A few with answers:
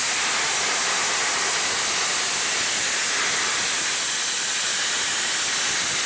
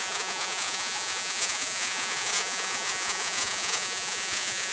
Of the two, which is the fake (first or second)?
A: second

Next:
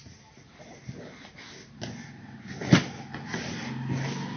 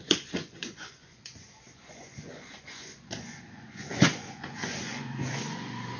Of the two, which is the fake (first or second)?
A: second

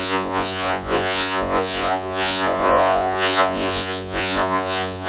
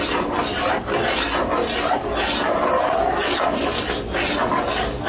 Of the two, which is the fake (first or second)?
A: first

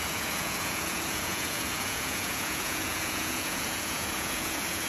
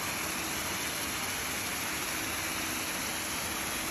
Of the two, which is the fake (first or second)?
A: first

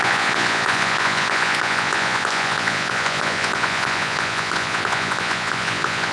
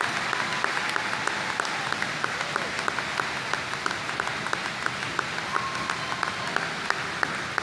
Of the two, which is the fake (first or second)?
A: first